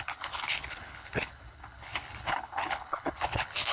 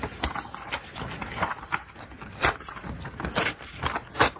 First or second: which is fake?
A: first